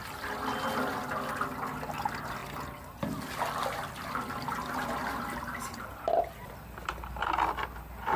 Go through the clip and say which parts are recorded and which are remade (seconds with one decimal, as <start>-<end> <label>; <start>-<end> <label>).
0.0-2.4 recorded; 2.4-7.3 remade; 7.3-8.2 recorded

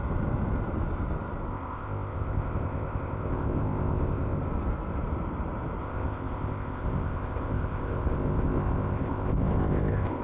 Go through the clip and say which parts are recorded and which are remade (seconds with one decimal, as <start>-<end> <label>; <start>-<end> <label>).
0.0-1.5 recorded; 1.5-4.4 remade; 4.4-5.8 recorded; 5.8-10.2 remade

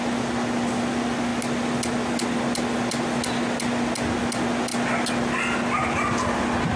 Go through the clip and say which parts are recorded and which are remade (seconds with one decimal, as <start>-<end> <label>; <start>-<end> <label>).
0.0-6.8 recorded